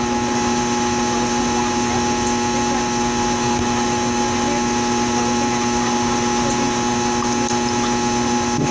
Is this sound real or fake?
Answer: real